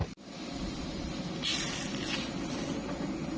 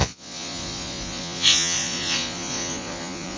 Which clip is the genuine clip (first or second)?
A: first